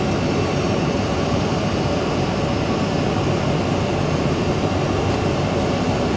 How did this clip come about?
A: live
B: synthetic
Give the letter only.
A